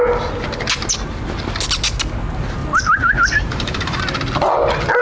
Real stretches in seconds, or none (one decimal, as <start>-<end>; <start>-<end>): 0.0-2.6; 4.0-5.0